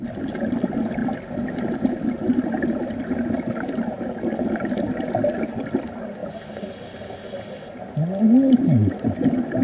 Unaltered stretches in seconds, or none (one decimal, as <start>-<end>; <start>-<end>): 0.0-9.6